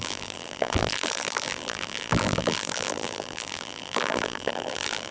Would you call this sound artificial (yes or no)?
yes